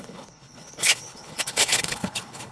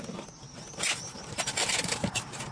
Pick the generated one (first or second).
first